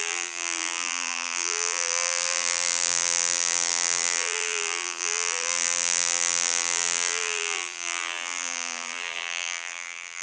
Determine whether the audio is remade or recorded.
remade